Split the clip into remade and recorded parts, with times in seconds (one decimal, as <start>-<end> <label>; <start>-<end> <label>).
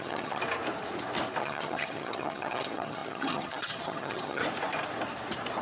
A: 0.0-0.4 remade; 0.4-1.4 recorded; 1.4-4.4 remade; 4.4-5.6 recorded